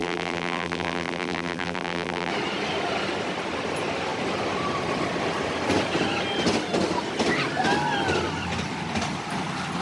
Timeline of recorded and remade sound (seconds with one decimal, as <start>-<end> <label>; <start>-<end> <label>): 0.0-2.3 remade; 2.3-9.8 recorded